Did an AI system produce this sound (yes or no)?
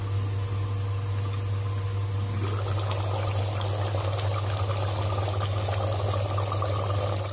no